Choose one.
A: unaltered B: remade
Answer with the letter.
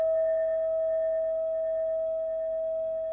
B